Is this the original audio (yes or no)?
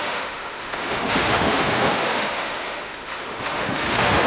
no